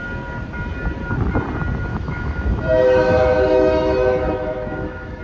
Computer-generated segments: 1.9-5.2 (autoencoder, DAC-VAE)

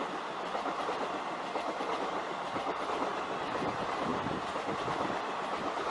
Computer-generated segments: none

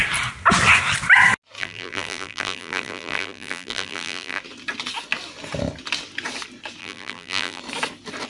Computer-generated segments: 1.6-4.4 (vocoder, BigVGAN v2); 6.8-7.6

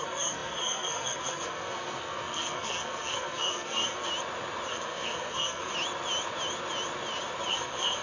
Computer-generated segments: 0.0-4.1 (codec, SNAC); 4.7-5.7; 7.5-8.0

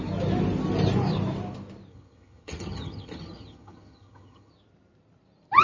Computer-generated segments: 1.9-4.5 (vocoder, HiFi-GAN)

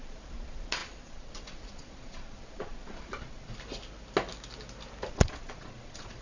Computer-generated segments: 0.0-3.5 (vocoder, Vocos); 5.1-6.2

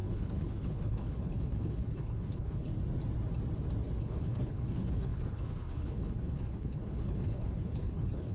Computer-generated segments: 0.0-2.7 (codec, HILCodec); 4.0-8.3

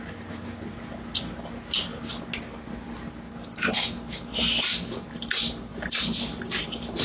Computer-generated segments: none